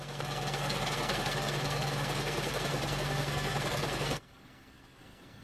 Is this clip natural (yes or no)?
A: no